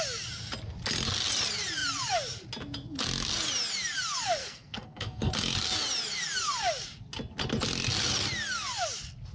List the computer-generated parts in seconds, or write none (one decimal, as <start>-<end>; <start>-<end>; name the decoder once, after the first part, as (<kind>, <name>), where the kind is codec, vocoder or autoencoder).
4.4-5.3 (codec, SNAC)